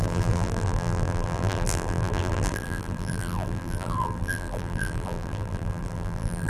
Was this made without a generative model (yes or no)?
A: no